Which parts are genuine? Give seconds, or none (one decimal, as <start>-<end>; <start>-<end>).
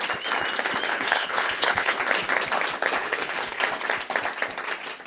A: 0.0-0.9; 2.0-3.0; 3.6-5.1